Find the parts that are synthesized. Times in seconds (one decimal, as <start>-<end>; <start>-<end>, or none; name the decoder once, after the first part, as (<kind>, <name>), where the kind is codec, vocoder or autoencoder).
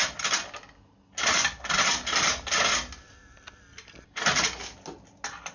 none